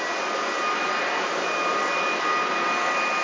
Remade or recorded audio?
recorded